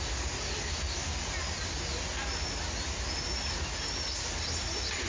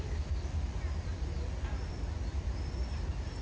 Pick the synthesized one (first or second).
second